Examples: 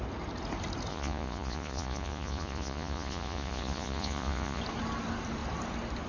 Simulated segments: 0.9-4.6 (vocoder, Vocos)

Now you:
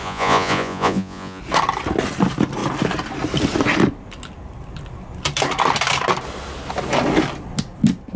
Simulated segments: 0.0-1.4 (vocoder, Vocos)